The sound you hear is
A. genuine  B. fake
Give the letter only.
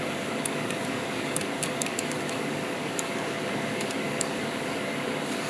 B